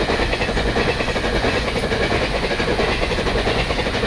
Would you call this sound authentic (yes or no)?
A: no